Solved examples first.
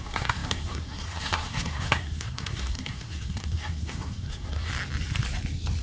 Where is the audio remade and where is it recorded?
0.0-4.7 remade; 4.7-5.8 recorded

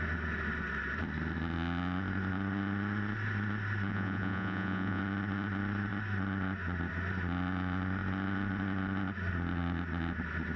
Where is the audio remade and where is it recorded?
0.0-3.9 recorded; 3.9-5.0 remade; 5.0-10.6 recorded